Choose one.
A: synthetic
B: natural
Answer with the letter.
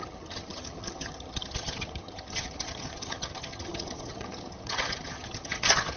A